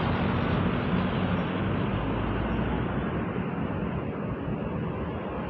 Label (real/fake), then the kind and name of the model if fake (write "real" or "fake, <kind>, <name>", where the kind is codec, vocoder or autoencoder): real